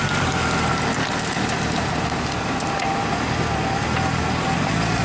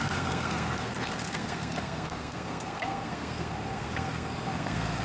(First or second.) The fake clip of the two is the second